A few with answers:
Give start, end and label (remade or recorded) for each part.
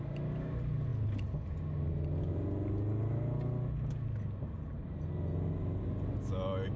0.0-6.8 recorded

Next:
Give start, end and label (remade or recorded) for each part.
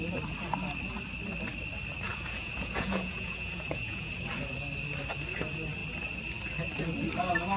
0.0-2.1 recorded; 2.1-4.1 remade; 4.1-7.6 recorded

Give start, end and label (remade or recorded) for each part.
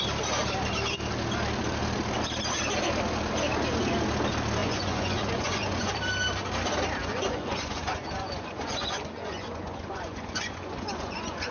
0.0-4.6 recorded; 4.6-5.9 remade; 5.9-7.0 recorded; 7.0-11.5 remade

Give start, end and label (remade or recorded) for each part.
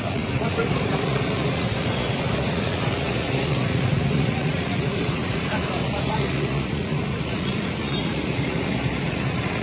0.0-9.6 remade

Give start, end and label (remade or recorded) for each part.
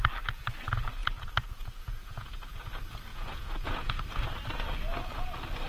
0.0-1.0 recorded; 1.0-2.7 remade; 2.7-3.1 recorded; 3.1-4.0 remade; 4.0-5.7 recorded